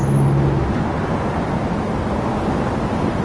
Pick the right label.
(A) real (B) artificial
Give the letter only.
A